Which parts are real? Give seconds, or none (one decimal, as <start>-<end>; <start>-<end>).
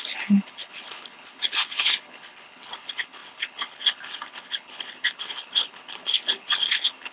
none